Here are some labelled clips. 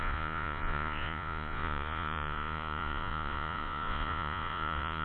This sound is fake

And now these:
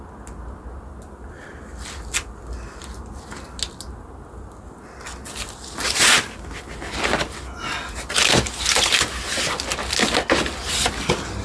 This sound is real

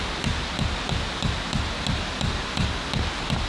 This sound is real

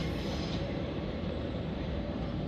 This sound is fake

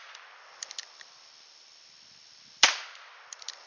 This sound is real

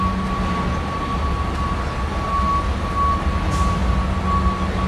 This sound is real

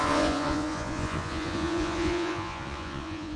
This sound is fake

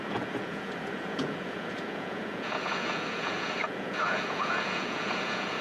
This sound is fake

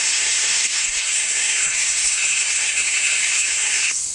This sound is fake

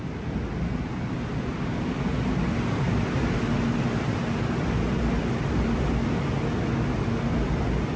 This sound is real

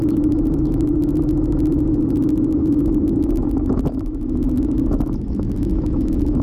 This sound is fake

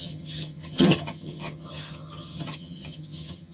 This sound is fake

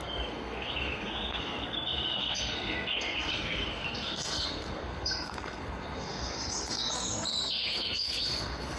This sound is fake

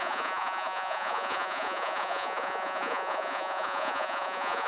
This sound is fake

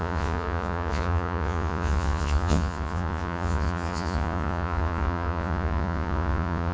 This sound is fake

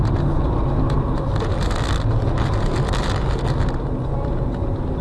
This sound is real